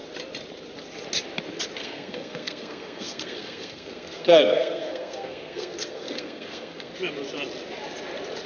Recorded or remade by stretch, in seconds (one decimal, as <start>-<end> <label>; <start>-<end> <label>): 0.0-1.8 recorded; 1.8-6.9 remade; 6.9-8.5 recorded